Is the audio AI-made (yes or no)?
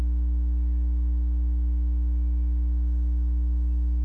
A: no